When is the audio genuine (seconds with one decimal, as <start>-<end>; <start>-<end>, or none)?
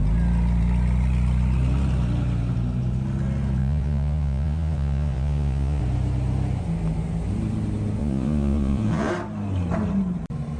0.0-3.6; 5.8-8.0; 9.1-10.6